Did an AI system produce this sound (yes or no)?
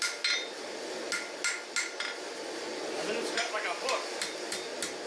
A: no